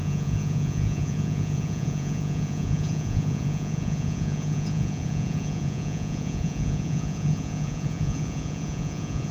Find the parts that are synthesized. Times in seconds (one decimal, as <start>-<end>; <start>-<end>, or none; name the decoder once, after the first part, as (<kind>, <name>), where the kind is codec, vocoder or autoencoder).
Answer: 0.0-9.3 (vocoder, Vocos)

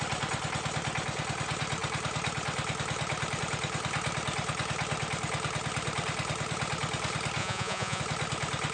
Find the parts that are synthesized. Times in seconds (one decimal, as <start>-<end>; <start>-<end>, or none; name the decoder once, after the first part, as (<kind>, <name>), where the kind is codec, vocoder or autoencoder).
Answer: 7.4-8.0 (vocoder, Vocos)

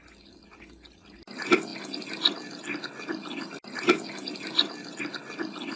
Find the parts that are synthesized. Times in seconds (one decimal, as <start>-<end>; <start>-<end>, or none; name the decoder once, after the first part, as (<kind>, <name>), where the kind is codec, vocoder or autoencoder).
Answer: none